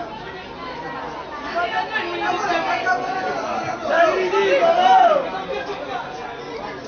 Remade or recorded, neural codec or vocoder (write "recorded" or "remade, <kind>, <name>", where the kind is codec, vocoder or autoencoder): recorded